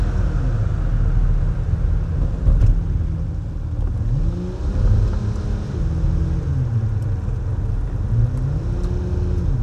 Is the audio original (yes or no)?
yes